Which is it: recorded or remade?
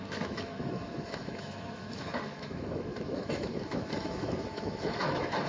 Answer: remade